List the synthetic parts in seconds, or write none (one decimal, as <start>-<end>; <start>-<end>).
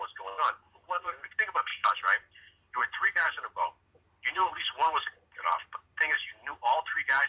0.0-1.7; 2.7-7.3